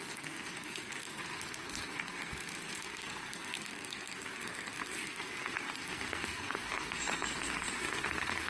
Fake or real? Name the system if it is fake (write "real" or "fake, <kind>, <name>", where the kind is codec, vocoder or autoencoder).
fake, codec, SNAC